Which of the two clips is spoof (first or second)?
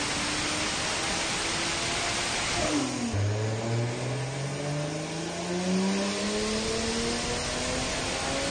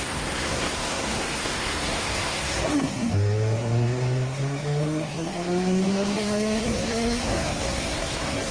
second